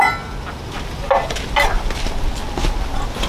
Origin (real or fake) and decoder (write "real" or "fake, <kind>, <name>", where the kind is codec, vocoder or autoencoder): real